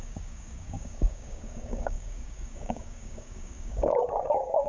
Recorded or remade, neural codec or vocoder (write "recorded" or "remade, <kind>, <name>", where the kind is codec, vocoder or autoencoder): remade, codec, DAC